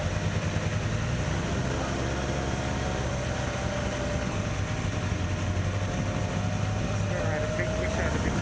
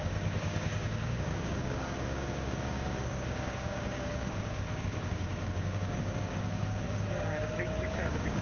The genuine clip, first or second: first